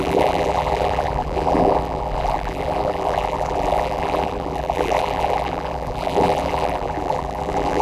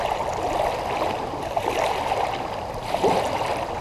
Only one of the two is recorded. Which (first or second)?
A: second